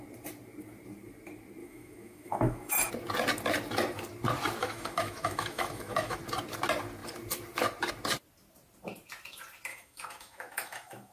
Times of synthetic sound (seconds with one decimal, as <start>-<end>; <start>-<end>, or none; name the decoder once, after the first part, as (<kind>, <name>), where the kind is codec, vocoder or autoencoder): 1.6-2.9 (autoencoder, DAC-VAE); 4.6-6.2; 9.7-11.1